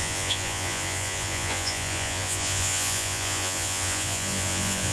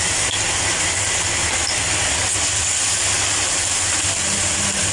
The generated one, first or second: first